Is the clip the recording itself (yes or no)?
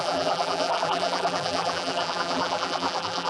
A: no